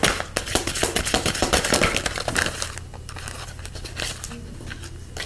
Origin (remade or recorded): recorded